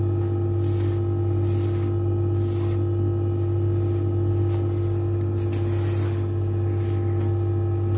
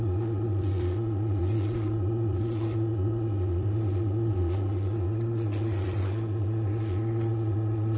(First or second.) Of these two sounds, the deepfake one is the second